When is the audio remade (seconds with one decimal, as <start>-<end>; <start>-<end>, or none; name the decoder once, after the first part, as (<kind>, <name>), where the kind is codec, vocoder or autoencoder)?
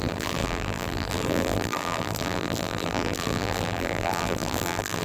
0.0-5.0 (vocoder, BigVGAN v2)